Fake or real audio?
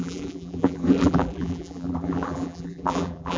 fake